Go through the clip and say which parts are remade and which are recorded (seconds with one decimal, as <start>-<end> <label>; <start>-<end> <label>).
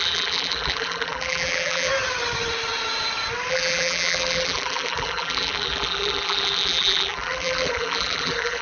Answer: 0.0-1.9 remade; 1.9-3.5 recorded; 3.5-8.6 remade